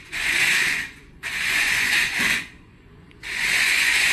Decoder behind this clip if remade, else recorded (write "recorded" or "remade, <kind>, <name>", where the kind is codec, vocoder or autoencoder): remade, vocoder, Vocos